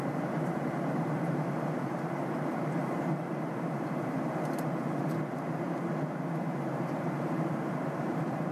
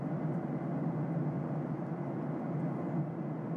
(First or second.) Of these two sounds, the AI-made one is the first